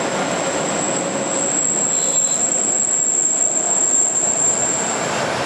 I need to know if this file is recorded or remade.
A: recorded